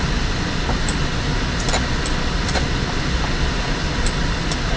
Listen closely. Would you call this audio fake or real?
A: real